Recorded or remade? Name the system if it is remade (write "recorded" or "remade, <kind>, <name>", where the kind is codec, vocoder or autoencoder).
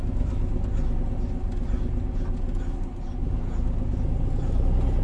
recorded